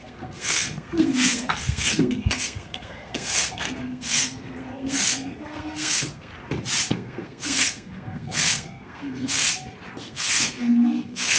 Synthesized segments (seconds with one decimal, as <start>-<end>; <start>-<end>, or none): 0.0-6.3; 6.9-9.5; 10.0-11.4